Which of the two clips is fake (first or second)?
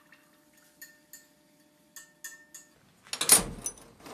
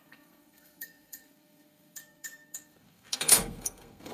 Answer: second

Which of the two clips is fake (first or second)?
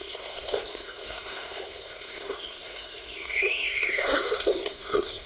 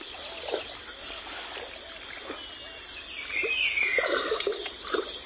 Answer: first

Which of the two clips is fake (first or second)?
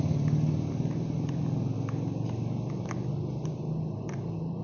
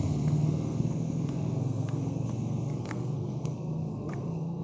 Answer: second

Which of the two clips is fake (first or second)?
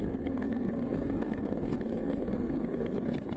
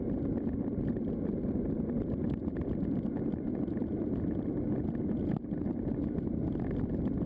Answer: first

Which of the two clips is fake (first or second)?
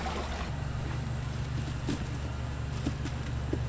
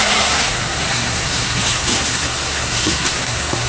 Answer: second